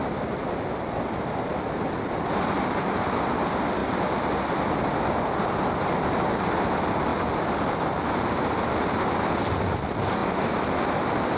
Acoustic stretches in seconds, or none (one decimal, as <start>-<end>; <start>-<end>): 0.0-11.4